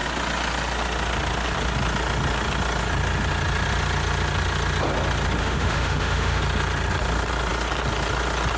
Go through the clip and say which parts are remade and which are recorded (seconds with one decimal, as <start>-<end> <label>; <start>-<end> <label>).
0.0-5.4 recorded; 5.4-6.4 remade; 6.4-8.6 recorded